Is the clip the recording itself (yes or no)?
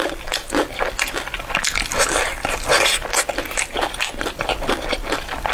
yes